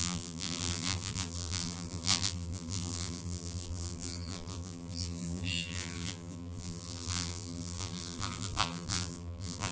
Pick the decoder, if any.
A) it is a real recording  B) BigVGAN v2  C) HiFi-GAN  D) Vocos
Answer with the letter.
B